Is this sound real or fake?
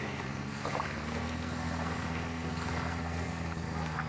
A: fake